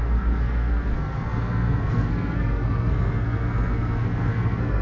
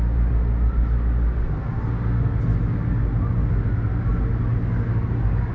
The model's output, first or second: first